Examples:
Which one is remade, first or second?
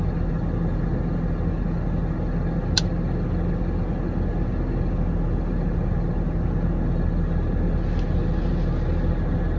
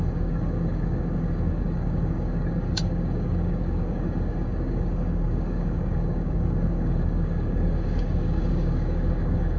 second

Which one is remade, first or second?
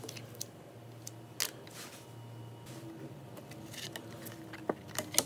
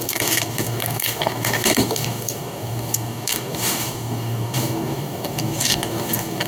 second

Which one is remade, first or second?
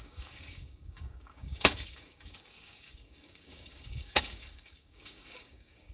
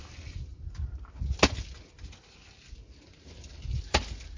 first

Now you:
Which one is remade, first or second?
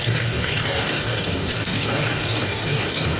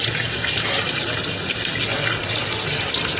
first